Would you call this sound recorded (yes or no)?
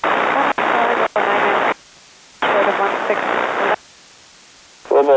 yes